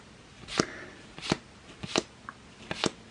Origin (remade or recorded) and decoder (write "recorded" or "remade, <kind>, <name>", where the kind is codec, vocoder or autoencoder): recorded